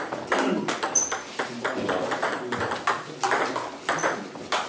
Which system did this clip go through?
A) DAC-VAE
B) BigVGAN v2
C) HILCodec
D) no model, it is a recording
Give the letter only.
D